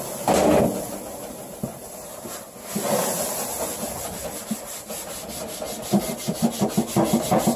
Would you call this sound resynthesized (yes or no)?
no